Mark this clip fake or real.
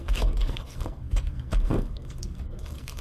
fake